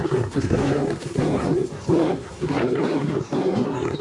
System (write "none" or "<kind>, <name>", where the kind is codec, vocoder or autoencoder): codec, SNAC